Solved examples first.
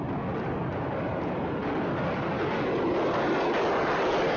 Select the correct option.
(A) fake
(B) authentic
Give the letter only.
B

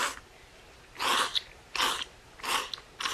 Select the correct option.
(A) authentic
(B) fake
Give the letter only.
A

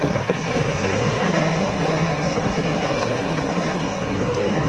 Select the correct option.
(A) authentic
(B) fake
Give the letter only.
B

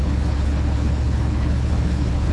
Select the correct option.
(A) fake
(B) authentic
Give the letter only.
A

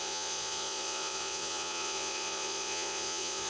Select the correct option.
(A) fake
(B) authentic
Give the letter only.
A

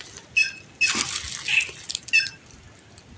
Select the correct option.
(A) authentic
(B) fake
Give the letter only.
A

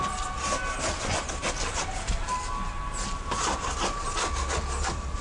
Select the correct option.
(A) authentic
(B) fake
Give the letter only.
A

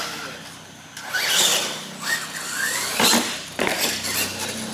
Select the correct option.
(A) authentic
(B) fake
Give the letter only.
A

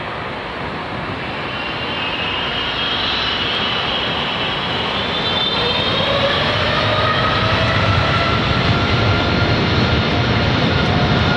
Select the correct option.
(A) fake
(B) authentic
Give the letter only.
A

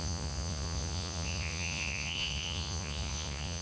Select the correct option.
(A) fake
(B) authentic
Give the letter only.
A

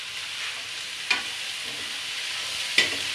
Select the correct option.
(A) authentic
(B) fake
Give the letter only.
B